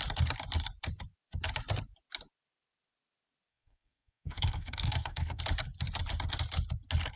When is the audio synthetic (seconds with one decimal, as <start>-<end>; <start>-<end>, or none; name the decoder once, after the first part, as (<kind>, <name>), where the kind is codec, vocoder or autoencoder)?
3.5-5.4 (codec, SNAC)